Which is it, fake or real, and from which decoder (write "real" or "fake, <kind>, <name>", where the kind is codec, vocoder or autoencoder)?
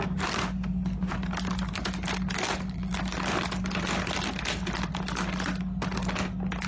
real